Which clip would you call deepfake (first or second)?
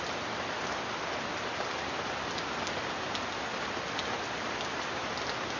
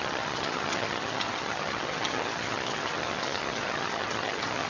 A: second